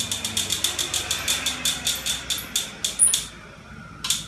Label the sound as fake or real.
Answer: real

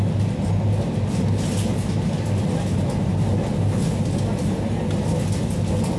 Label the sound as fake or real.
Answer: real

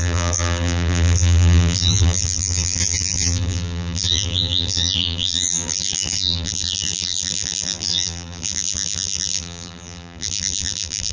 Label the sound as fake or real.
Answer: fake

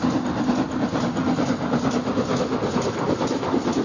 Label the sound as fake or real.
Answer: real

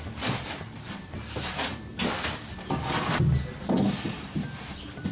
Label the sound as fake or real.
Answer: real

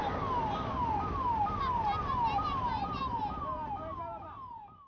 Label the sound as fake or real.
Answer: real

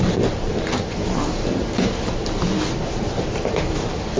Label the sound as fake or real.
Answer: fake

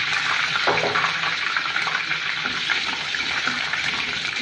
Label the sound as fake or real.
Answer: fake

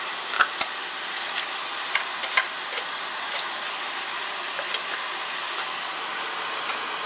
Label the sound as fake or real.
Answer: fake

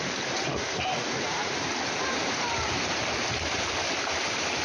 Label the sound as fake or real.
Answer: fake